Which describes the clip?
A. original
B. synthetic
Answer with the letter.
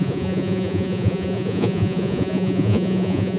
B